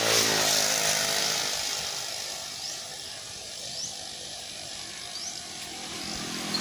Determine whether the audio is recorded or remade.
recorded